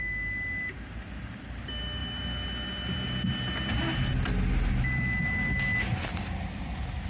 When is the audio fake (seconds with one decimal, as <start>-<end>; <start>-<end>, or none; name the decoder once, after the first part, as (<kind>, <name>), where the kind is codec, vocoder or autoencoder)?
none